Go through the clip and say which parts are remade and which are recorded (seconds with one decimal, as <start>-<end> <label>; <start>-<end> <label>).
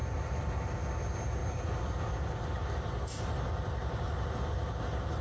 0.0-5.2 recorded